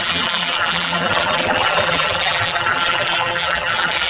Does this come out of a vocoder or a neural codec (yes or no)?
yes